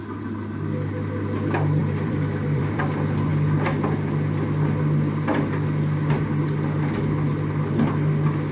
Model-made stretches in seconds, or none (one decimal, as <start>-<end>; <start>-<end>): 1.8-2.8